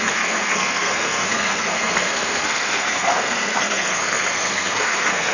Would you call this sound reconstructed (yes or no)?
yes